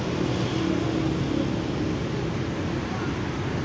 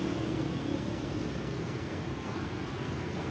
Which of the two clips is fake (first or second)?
second